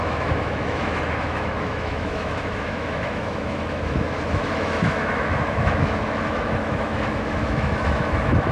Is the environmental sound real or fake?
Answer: fake